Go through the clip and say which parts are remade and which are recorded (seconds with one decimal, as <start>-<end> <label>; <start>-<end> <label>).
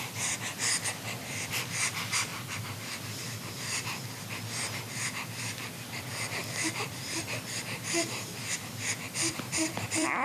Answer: 0.0-2.3 remade; 2.3-5.7 recorded; 5.7-10.2 remade